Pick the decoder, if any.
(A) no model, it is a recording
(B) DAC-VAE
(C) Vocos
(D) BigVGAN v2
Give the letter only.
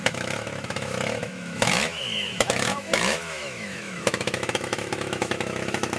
B